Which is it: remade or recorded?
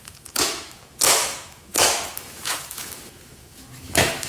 remade